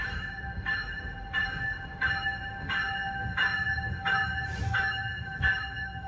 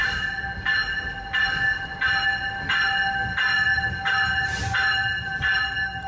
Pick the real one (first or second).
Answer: second